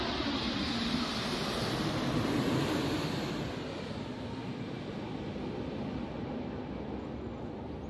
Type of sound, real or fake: real